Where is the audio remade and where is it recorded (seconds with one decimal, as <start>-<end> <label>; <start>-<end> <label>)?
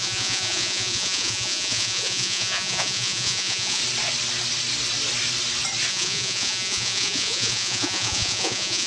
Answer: 0.0-3.8 remade; 3.8-5.9 recorded; 5.9-8.9 remade